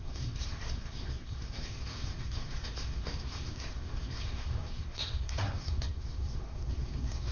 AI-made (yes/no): yes